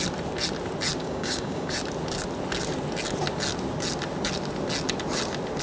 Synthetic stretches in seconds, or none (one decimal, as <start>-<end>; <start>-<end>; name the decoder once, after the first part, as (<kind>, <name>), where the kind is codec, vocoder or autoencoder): 1.0-1.7 (codec, DAC)